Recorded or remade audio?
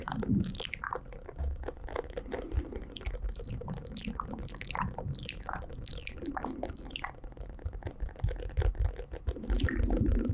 recorded